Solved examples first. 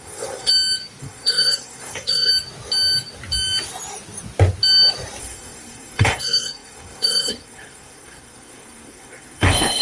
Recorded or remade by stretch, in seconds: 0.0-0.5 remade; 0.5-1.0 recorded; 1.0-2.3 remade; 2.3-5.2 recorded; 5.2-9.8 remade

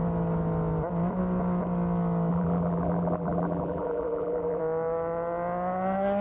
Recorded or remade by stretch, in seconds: 0.0-2.3 recorded; 2.3-4.6 remade; 4.6-6.2 recorded

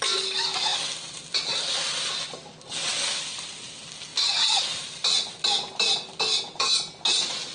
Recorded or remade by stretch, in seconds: 0.0-7.5 recorded

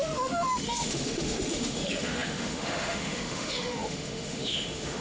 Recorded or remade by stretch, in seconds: 0.0-5.0 remade

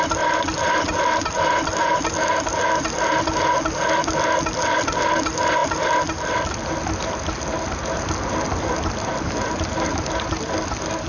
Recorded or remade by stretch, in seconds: 0.0-11.1 recorded